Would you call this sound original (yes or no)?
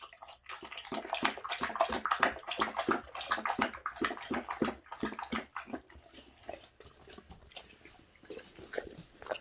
yes